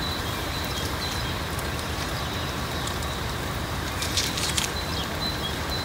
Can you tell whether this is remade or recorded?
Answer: remade